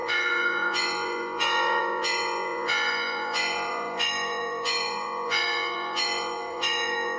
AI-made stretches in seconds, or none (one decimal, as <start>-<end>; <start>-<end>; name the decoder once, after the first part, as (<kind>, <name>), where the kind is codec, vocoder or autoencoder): 0.0-7.2 (vocoder, Vocos)